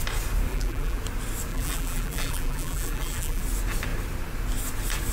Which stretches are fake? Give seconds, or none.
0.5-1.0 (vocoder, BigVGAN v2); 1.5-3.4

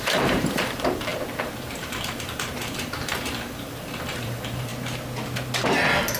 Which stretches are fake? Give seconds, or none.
0.0-4.7 (vocoder, BigVGAN v2)

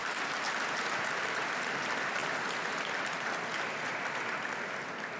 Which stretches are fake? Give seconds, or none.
0.0-1.0 (vocoder, BigVGAN v2)

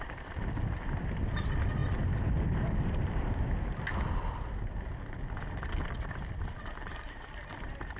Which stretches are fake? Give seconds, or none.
4.9-7.4 (vocoder, BigVGAN v2)

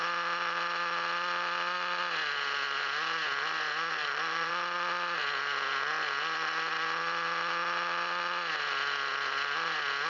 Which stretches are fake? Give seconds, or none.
4.0-4.5 (vocoder, BigVGAN v2)